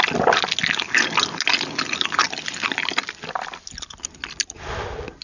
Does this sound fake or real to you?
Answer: real